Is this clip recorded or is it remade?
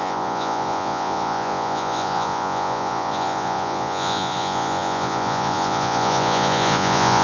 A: remade